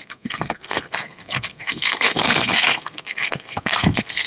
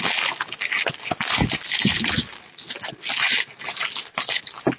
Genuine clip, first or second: second